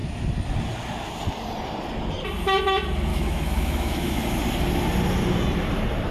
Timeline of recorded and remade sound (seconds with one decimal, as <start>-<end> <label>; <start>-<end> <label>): 0.0-3.1 recorded; 3.1-4.2 remade; 4.2-6.1 recorded